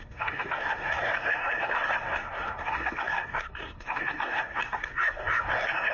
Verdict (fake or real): fake